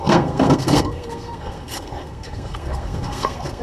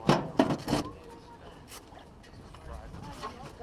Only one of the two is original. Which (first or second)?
second